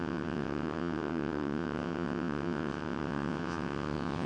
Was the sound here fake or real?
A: fake